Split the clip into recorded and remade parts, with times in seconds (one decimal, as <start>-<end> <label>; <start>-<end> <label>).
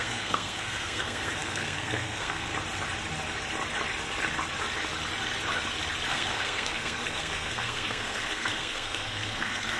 0.0-2.5 remade; 2.5-6.1 recorded; 6.1-9.8 remade